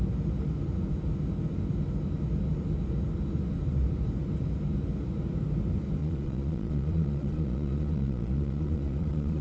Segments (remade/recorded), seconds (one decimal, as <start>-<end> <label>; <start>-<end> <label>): 0.0-6.0 recorded; 6.0-9.4 remade